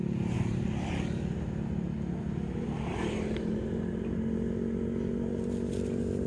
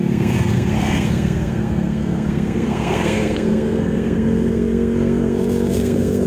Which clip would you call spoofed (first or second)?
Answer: second